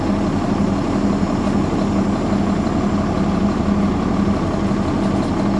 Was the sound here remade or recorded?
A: recorded